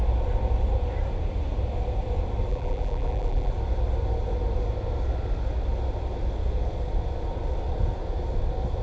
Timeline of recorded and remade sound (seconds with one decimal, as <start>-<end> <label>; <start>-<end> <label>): 0.0-2.5 recorded; 2.5-3.5 remade; 3.5-8.8 recorded